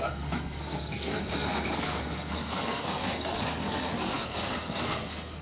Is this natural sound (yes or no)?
no